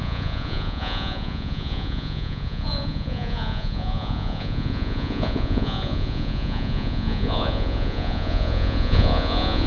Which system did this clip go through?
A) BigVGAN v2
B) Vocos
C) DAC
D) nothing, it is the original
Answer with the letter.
B